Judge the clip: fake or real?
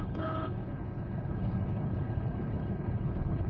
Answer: fake